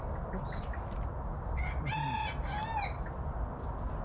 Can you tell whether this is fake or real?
real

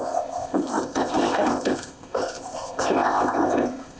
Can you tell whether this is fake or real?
fake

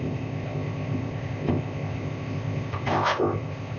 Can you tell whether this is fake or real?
fake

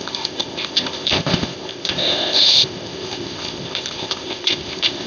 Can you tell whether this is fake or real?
fake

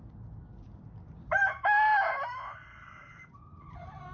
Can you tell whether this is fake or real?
real